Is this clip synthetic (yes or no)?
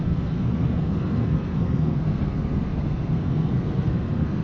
yes